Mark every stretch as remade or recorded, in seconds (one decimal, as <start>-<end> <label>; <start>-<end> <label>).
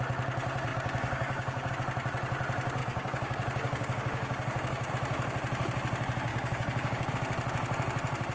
0.0-0.7 recorded; 0.7-1.7 remade; 1.7-2.8 recorded; 2.8-4.9 remade; 4.9-6.3 recorded; 6.3-7.1 remade; 7.1-8.3 recorded